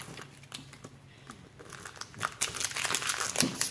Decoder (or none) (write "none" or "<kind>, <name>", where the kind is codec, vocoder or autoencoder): none